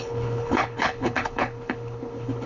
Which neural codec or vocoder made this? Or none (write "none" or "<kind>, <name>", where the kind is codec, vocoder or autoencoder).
codec, HILCodec